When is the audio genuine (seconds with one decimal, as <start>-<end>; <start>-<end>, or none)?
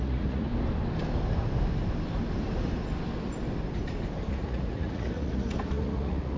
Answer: 0.5-4.3